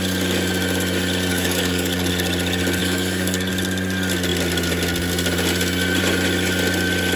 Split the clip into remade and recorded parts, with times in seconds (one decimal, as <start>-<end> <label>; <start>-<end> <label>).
0.0-1.3 recorded; 1.3-2.1 remade; 2.1-2.8 recorded; 2.8-3.5 remade; 3.5-7.2 recorded